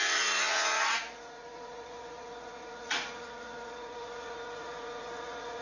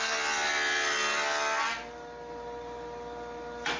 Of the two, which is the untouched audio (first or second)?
second